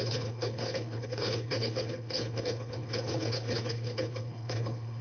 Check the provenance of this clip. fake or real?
fake